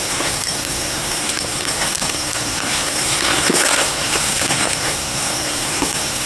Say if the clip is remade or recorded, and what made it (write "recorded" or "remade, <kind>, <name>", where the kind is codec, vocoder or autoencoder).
remade, codec, SNAC